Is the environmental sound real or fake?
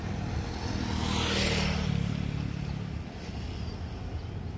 real